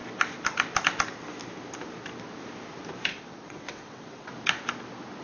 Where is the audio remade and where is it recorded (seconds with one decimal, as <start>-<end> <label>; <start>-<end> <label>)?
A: 0.0-3.1 recorded; 3.1-4.3 remade; 4.3-5.2 recorded